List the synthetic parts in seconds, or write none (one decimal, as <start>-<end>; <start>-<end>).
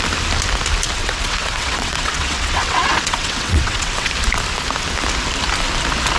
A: 1.0-4.1